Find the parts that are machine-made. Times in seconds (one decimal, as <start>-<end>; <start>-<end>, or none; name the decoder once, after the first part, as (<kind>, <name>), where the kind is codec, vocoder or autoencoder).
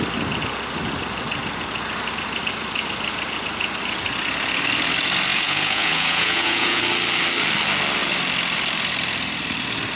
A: 5.3-6.8 (vocoder, Vocos)